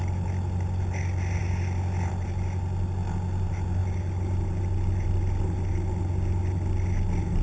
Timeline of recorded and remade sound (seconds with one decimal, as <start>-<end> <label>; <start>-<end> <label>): 0.0-7.4 recorded